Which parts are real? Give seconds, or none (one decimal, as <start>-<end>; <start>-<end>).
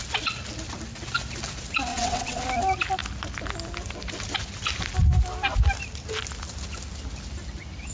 0.0-1.9; 2.4-7.9